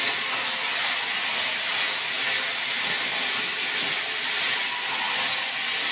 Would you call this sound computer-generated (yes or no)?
no